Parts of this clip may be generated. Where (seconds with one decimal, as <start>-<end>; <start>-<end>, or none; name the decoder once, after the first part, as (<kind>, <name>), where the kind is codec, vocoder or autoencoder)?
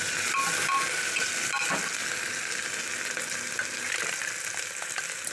none